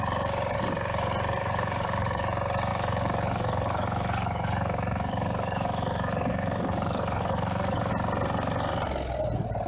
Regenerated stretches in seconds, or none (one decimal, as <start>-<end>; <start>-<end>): 1.4-2.2; 2.7-7.9